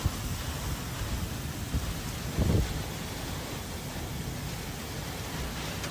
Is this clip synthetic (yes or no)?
no